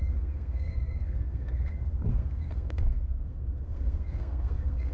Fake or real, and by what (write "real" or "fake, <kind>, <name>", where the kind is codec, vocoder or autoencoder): fake, codec, SNAC